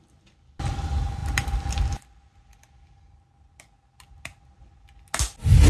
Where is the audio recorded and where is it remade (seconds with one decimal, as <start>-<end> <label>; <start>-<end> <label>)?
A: 0.0-5.7 recorded